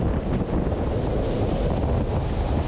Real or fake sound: real